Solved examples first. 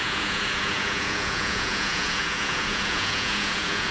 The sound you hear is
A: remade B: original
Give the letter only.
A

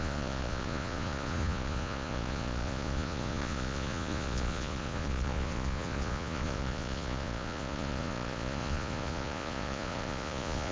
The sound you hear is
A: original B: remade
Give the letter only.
B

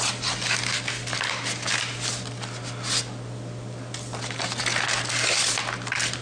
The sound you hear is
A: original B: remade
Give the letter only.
A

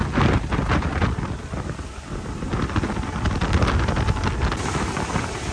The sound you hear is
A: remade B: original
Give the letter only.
B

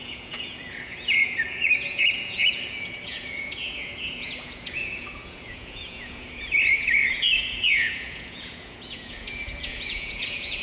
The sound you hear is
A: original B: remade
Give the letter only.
B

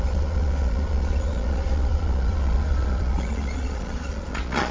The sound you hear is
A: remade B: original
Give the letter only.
A